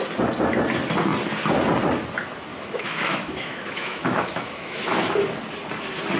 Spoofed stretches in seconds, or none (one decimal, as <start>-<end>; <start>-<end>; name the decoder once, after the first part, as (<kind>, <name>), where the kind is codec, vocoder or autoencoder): 2.5-5.3 (autoencoder, DAC-VAE)